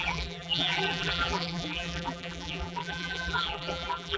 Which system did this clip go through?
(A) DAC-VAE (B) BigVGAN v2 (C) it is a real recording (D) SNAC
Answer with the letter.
B